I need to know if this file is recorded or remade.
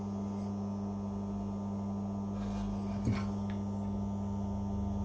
recorded